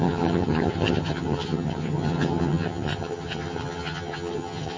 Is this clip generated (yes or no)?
yes